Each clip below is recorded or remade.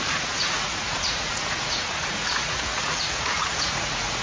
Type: remade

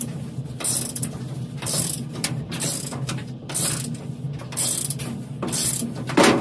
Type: recorded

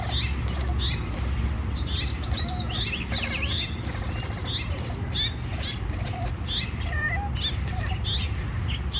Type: recorded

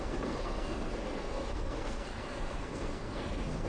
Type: remade